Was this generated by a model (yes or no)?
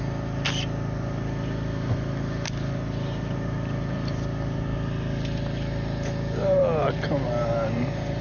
no